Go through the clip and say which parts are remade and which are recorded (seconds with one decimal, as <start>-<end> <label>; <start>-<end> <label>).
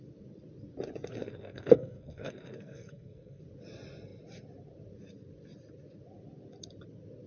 0.0-1.1 recorded; 1.1-3.4 remade; 3.4-7.3 recorded